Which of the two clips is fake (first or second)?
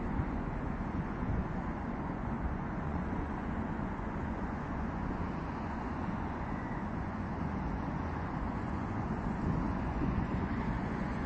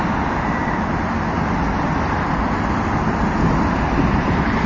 first